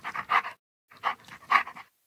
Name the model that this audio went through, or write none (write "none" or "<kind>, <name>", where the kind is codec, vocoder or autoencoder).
none